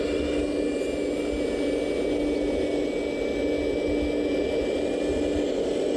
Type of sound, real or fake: real